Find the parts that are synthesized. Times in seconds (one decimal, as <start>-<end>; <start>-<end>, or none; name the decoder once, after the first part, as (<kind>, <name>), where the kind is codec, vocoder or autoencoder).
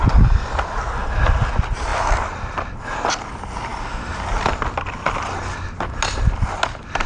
none